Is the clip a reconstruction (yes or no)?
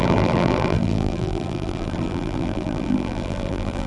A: yes